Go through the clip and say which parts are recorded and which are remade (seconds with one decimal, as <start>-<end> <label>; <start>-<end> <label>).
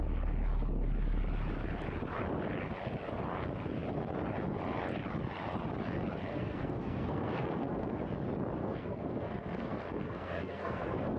0.0-6.3 recorded; 6.3-8.0 remade; 8.0-8.6 recorded; 8.6-11.2 remade